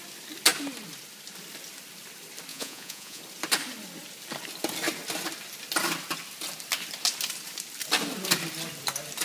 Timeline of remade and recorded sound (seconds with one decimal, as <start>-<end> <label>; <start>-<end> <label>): 0.0-2.5 recorded; 2.5-3.2 remade; 3.2-9.2 recorded